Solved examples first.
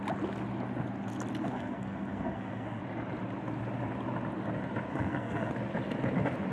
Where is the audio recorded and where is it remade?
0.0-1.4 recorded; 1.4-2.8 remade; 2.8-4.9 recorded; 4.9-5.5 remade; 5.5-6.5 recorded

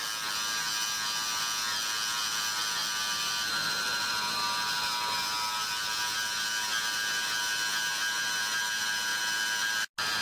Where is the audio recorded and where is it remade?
0.0-10.2 recorded